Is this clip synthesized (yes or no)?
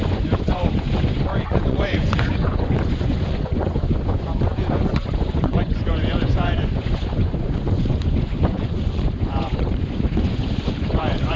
yes